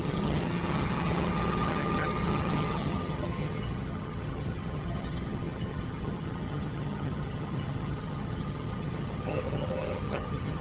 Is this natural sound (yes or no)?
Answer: no